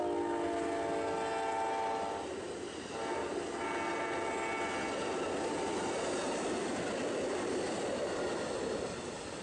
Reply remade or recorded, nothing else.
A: recorded